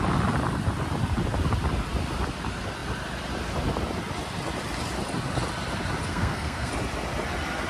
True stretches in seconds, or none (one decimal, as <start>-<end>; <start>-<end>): 0.0-6.1; 6.7-7.7